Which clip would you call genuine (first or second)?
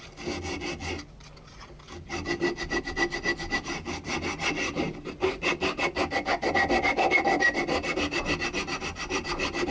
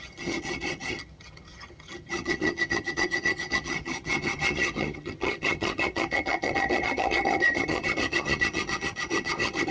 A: first